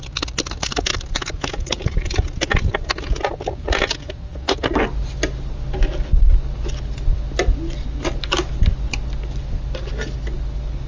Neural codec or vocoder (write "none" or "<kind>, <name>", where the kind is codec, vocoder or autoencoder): none